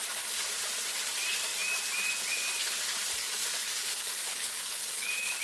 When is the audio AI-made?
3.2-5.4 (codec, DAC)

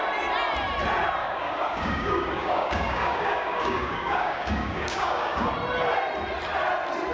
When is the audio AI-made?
1.2-5.5 (codec, DAC)

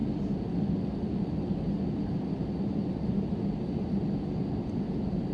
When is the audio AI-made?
none

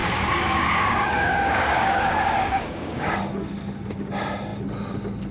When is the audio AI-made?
0.0-3.2 (codec, DAC)

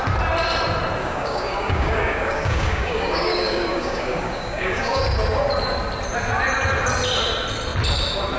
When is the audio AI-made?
1.0-5.0 (codec, DAC)

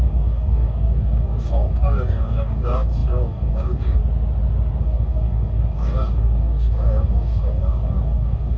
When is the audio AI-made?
0.0-4.0 (codec, DAC); 4.8-8.6